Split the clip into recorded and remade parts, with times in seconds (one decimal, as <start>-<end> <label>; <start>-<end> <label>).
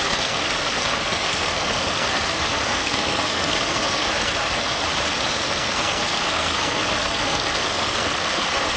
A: 0.0-4.8 remade; 4.8-5.3 recorded; 5.3-8.8 remade